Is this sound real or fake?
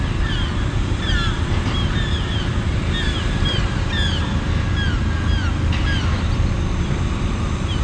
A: fake